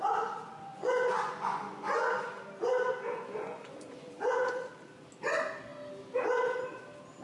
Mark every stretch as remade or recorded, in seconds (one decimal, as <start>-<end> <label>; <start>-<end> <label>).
0.0-0.7 recorded; 0.7-2.1 remade; 2.1-2.9 recorded; 2.9-4.7 remade; 4.7-7.2 recorded